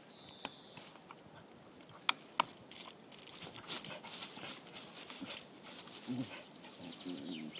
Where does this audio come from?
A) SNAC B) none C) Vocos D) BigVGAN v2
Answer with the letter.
B